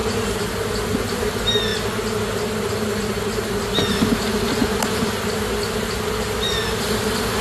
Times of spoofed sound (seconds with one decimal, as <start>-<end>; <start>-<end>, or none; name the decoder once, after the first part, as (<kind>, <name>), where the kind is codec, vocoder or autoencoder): none